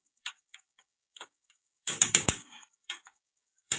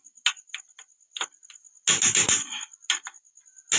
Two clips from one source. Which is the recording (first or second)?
second